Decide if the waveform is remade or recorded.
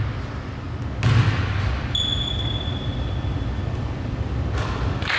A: recorded